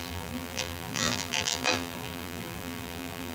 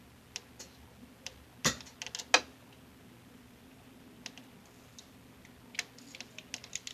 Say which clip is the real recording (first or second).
second